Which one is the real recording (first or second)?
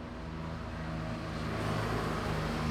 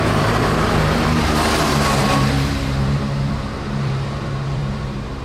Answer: first